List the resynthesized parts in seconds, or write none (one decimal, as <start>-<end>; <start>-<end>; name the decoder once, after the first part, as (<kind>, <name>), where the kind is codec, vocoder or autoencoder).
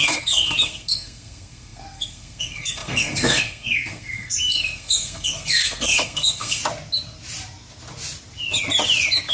0.0-6.6 (codec, SNAC)